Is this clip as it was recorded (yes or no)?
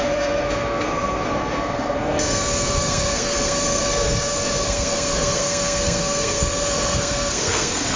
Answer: no